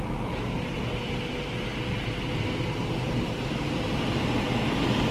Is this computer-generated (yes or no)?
no